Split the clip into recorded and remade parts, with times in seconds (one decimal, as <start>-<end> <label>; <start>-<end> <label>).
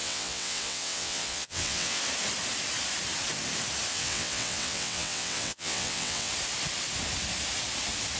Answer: 0.0-2.0 remade; 2.0-3.9 recorded; 3.9-6.3 remade; 6.3-8.2 recorded